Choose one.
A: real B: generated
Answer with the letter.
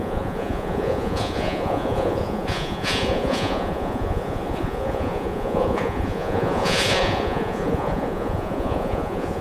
B